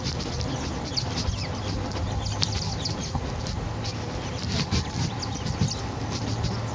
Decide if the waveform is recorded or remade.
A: recorded